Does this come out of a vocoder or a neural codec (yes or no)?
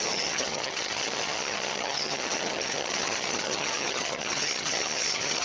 yes